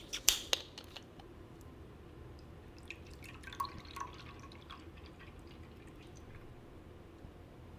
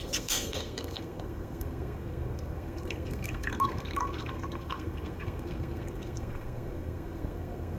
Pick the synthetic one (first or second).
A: second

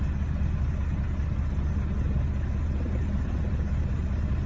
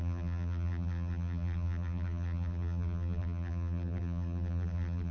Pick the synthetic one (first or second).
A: second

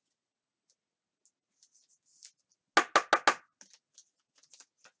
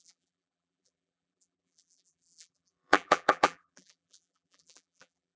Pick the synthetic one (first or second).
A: second